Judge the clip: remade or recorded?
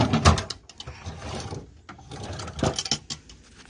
recorded